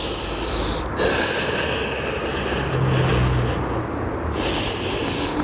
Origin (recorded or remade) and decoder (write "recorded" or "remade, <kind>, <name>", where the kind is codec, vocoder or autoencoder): recorded